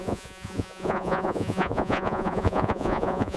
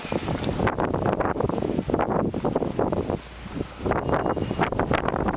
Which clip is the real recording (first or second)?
second